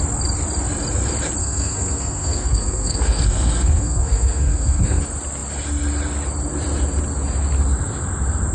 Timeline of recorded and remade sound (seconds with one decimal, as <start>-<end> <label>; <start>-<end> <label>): 0.0-1.4 recorded; 1.4-5.0 remade; 5.0-8.5 recorded

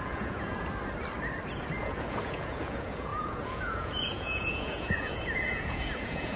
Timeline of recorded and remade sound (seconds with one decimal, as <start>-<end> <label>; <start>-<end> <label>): 0.0-0.6 remade; 0.6-1.8 recorded; 1.8-6.4 remade

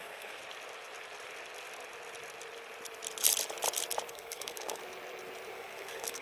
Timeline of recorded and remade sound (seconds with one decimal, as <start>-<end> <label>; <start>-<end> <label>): 0.0-0.4 remade; 0.4-4.1 recorded; 4.1-4.8 remade; 4.8-5.5 recorded; 5.5-6.2 remade